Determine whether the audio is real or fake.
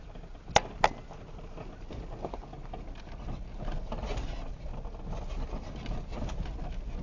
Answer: real